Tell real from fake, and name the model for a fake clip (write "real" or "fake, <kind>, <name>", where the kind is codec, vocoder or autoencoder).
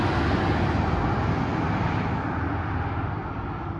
real